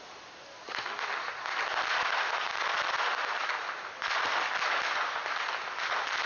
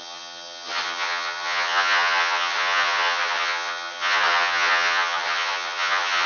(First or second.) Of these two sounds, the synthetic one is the second